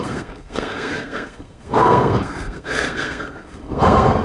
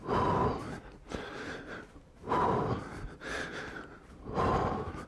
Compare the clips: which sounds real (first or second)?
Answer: second